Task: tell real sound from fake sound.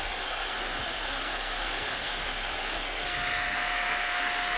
fake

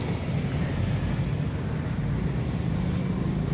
real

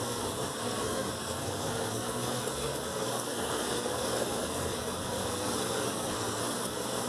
fake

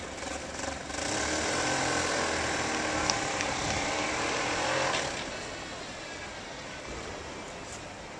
real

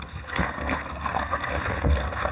fake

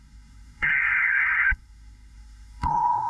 fake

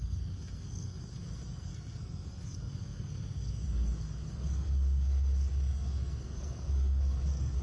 fake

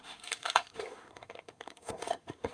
fake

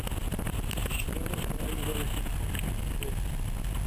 real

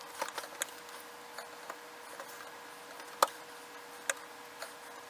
real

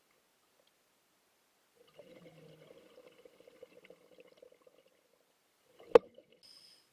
real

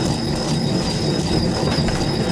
real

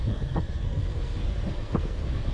fake